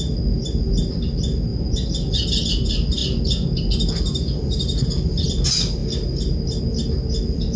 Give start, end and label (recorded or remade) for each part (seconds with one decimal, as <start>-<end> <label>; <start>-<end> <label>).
0.0-7.6 recorded